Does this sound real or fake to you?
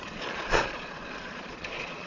fake